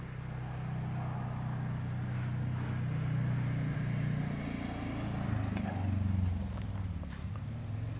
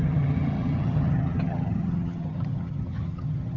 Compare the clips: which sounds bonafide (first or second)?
first